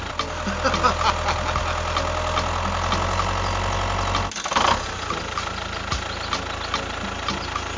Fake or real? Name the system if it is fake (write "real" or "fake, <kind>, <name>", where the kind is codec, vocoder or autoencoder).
real